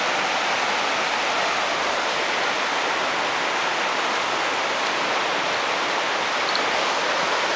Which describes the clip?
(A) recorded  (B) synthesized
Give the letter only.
A